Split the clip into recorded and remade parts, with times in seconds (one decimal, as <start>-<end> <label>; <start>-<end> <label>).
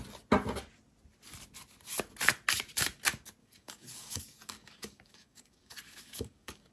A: 0.0-3.4 recorded; 3.4-6.7 remade